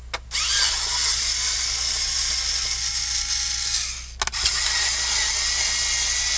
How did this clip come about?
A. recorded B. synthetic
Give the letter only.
A